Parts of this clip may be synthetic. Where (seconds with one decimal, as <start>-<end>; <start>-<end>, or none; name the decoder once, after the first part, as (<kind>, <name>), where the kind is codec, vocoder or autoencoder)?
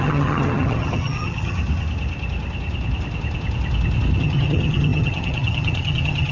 0.0-1.6 (vocoder, HiFi-GAN); 4.2-6.3